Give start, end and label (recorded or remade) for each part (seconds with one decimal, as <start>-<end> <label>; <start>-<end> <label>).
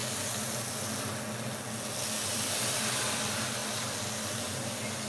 0.0-5.1 recorded